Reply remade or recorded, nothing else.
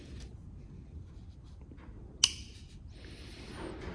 recorded